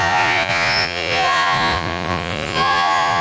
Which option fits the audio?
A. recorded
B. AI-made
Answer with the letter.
B